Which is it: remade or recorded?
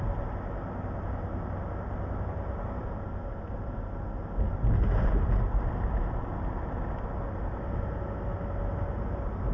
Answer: recorded